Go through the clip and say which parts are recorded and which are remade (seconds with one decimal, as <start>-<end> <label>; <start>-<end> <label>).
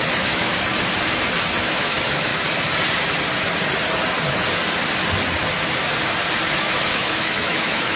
0.0-0.5 remade; 0.5-1.7 recorded; 1.7-2.3 remade; 2.3-6.5 recorded; 6.5-8.0 remade